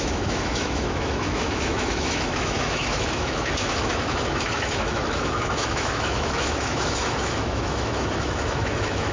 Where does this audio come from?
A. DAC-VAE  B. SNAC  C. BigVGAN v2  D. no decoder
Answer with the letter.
A